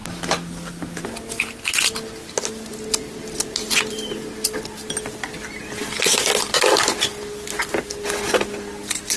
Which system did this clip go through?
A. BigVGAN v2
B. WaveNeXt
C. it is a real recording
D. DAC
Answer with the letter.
C